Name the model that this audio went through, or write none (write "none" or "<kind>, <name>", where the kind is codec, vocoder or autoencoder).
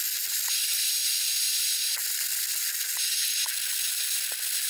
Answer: none